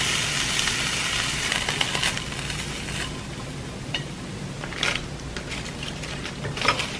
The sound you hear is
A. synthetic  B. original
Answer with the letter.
B